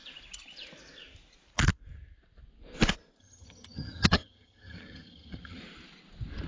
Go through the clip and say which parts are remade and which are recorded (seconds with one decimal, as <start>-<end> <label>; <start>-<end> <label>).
0.0-3.2 recorded; 3.2-5.6 remade; 5.6-6.5 recorded